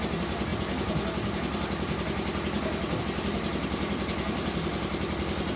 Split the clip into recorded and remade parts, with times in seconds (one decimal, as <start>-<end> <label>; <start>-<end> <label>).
0.0-5.6 recorded